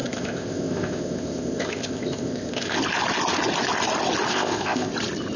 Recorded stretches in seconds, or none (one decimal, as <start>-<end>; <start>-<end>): 2.8-4.3; 4.9-5.4